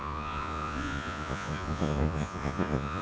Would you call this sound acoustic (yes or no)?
no